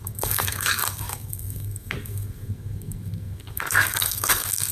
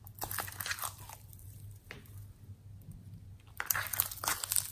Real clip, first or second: second